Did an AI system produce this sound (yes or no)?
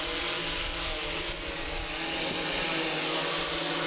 no